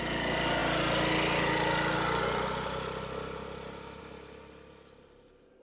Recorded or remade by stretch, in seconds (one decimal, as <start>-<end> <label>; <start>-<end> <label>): 0.0-5.6 recorded